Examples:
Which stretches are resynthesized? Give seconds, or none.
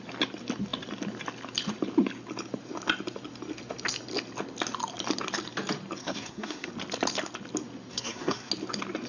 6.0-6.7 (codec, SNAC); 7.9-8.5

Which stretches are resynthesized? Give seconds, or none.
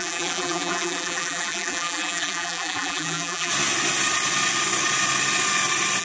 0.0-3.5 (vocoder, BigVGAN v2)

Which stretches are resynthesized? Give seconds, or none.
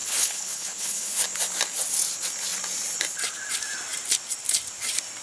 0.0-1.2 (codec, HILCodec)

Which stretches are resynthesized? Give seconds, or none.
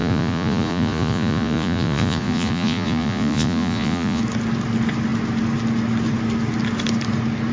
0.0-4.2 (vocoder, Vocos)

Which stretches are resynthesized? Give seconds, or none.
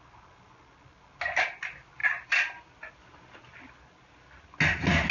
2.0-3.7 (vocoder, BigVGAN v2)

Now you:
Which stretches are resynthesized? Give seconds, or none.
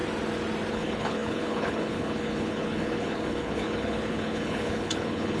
0.7-5.4 (codec, HILCodec)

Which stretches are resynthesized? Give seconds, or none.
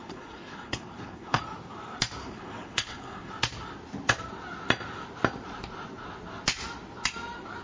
0.0-1.4 (codec, HILCodec); 2.2-3.3